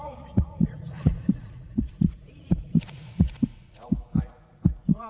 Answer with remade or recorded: remade